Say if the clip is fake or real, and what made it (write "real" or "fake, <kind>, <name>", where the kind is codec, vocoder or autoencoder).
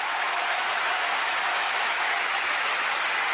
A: fake, autoencoder, DAC-VAE